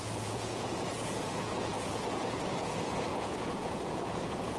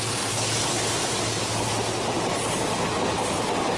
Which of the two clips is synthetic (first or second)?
first